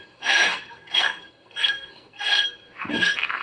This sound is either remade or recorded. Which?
remade